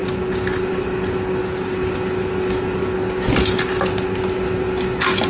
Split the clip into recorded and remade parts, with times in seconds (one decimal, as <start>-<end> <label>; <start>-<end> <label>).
0.0-5.3 recorded

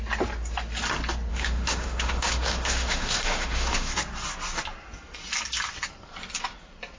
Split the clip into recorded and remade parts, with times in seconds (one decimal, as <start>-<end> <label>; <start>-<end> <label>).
0.0-1.3 recorded; 1.3-3.9 remade; 3.9-7.0 recorded

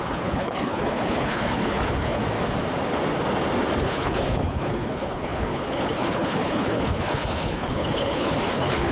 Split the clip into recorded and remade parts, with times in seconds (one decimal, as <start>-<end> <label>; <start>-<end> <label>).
0.0-2.2 remade; 2.2-3.8 recorded; 3.8-8.9 remade

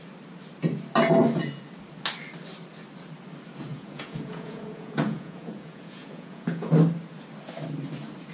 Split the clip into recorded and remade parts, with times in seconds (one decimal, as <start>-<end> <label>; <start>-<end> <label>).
0.0-3.7 recorded; 3.7-6.7 remade; 6.7-8.3 recorded

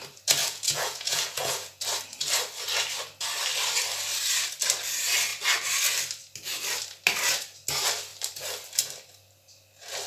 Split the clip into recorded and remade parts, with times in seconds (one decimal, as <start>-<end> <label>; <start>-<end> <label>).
0.0-0.4 recorded; 0.4-1.8 remade; 1.8-10.1 recorded

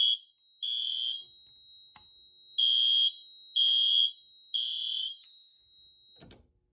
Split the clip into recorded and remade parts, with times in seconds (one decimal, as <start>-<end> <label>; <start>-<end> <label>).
0.0-5.0 recorded; 5.0-5.6 remade; 5.6-6.7 recorded